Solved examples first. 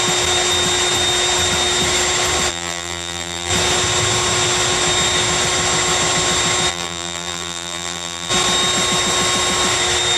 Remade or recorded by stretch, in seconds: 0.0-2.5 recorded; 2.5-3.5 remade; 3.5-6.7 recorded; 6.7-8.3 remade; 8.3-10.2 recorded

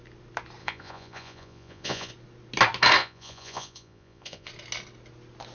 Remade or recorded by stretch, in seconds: 0.0-0.6 recorded; 0.6-2.1 remade; 2.1-3.0 recorded; 3.0-4.5 remade; 4.5-5.5 recorded

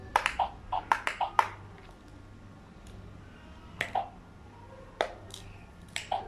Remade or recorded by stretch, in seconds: 0.0-6.3 recorded